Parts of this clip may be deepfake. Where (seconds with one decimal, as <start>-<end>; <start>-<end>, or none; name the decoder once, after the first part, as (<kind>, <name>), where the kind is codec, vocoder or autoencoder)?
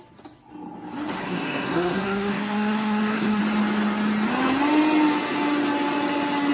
1.2-3.4 (codec, SNAC)